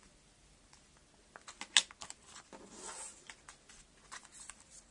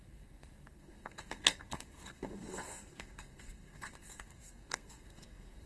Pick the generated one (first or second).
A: second